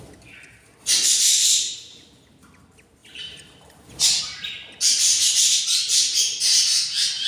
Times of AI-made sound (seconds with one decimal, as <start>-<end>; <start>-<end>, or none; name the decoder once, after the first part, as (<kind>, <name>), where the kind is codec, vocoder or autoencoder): 3.0-4.2 (vocoder, BigVGAN v2)